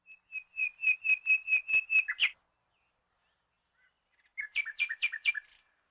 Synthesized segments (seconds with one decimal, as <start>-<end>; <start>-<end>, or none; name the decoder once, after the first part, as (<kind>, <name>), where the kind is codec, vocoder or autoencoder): 4.3-5.3 (vocoder, BigVGAN v2)